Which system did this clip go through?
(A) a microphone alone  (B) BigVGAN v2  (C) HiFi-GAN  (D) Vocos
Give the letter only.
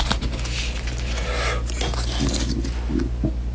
A